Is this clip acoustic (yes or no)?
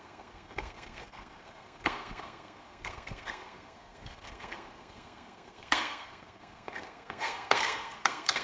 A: no